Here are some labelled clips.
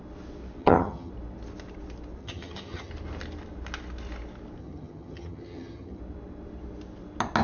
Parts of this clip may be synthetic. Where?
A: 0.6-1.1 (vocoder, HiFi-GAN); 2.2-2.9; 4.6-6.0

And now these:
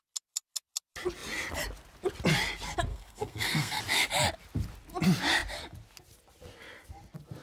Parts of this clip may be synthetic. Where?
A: 2.9-3.8 (codec, SNAC)

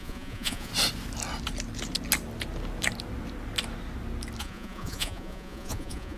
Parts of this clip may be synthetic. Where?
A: 0.0-0.7 (vocoder, Vocos); 4.4-6.2

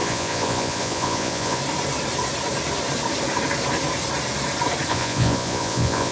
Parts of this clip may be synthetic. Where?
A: 0.0-1.6 (vocoder, Vocos); 4.9-6.1

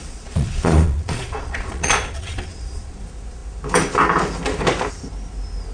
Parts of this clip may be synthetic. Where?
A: 0.0-3.0 (vocoder, Vocos)

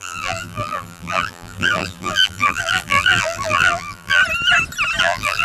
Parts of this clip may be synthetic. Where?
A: 0.0-4.2 (vocoder, BigVGAN v2); 5.0-5.4

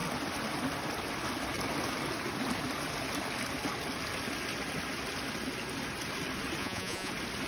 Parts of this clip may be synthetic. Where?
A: 6.6-7.1 (vocoder, Vocos)

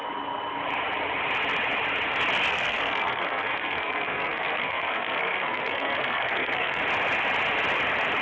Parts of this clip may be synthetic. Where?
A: 2.5-6.8 (codec, SNAC)